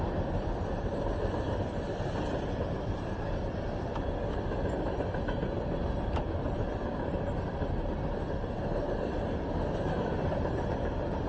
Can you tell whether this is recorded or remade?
recorded